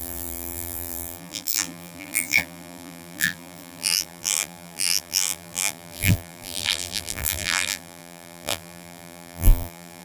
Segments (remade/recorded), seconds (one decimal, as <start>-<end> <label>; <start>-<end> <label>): 0.0-10.0 remade